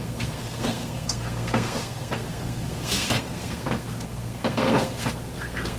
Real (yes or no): no